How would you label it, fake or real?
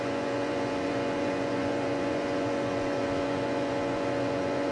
fake